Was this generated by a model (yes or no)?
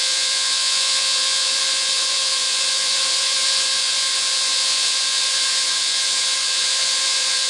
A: yes